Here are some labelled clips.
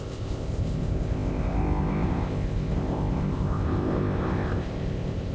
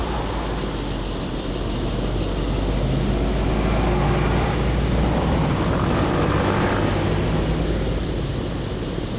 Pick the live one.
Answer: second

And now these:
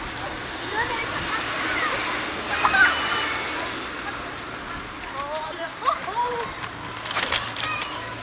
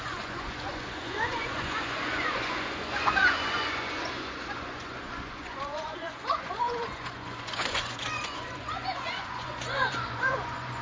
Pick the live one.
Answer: first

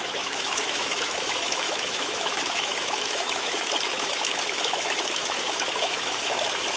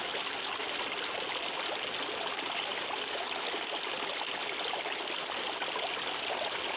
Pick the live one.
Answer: second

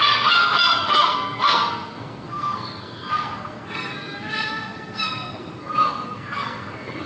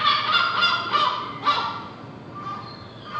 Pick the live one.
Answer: second